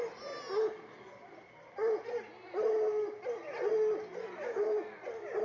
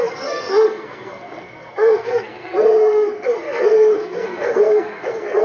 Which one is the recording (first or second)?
first